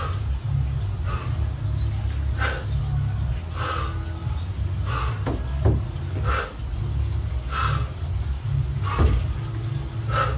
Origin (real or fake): real